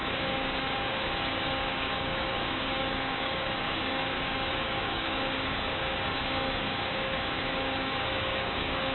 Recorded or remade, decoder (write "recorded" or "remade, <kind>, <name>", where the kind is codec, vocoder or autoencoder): remade, codec, DAC